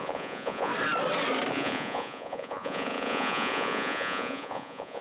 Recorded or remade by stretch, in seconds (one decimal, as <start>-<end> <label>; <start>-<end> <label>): 0.0-0.7 remade; 0.7-1.5 recorded; 1.5-5.0 remade